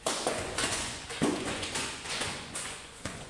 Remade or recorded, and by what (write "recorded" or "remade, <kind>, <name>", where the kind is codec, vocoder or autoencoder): remade, vocoder, Vocos